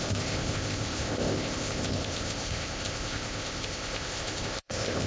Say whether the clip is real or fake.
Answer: fake